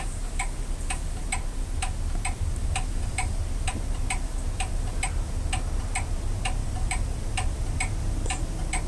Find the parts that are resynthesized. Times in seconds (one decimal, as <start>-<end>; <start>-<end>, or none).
2.6-3.3; 6.6-7.3